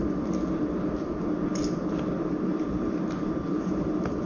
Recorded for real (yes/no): yes